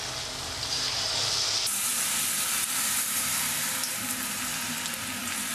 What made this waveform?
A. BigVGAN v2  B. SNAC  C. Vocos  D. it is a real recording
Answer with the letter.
D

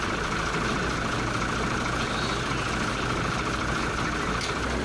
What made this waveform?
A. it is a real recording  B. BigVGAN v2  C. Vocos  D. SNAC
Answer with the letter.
A